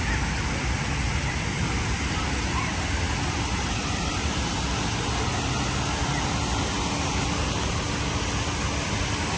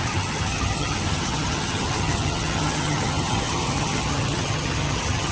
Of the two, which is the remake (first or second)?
second